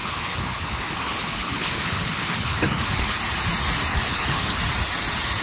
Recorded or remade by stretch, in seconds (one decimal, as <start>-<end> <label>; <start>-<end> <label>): 0.0-3.2 remade; 3.2-3.9 recorded; 3.9-4.6 remade; 4.6-5.4 recorded